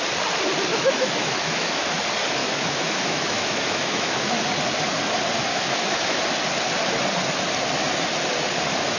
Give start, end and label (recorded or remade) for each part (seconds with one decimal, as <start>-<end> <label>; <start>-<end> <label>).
0.0-0.7 recorded; 0.7-2.0 remade; 2.0-2.4 recorded; 2.4-4.3 remade; 4.3-5.5 recorded; 5.5-6.2 remade; 6.2-9.0 recorded